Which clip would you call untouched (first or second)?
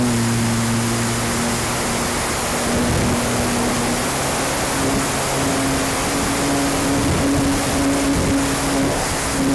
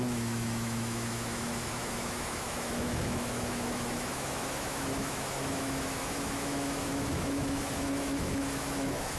first